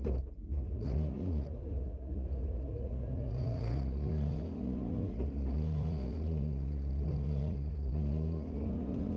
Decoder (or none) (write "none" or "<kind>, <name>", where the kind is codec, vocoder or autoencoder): vocoder, Vocos